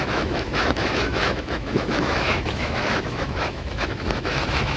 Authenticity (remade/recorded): remade